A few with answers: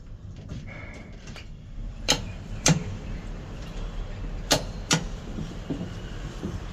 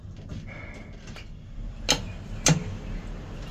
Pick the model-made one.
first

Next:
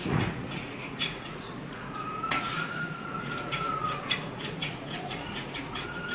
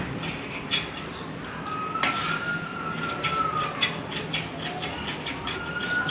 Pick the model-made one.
first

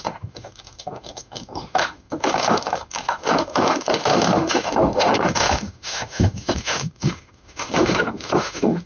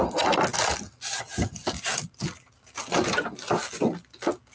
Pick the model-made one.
first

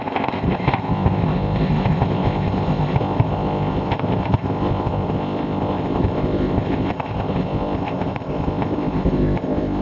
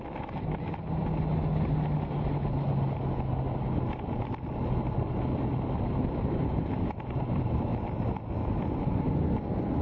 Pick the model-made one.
first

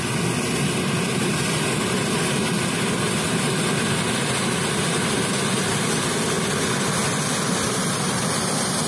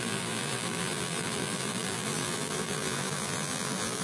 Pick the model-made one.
second